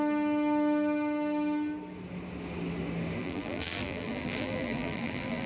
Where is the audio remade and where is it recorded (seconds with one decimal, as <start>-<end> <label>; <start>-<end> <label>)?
0.0-3.2 recorded; 3.2-5.5 remade